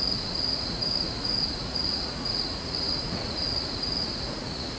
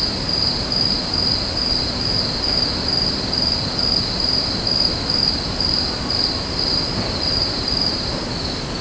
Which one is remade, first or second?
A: first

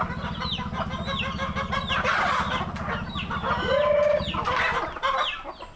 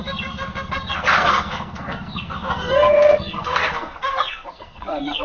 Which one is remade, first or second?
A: second